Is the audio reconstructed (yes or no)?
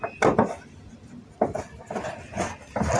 no